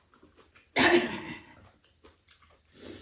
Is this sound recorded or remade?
recorded